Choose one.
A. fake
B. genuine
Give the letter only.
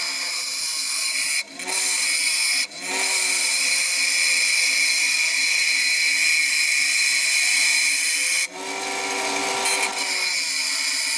B